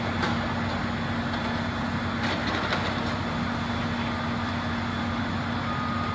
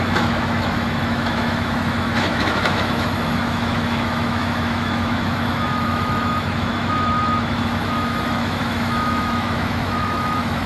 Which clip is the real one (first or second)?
first